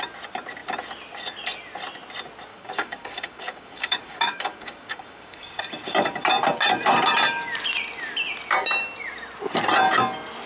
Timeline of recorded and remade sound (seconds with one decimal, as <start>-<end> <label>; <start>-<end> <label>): 0.0-2.5 recorded; 2.5-5.6 remade; 5.6-10.5 recorded